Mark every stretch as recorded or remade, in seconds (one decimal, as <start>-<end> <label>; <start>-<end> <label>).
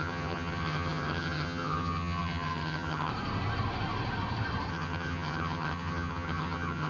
0.0-3.1 remade; 3.1-4.7 recorded; 4.7-6.9 remade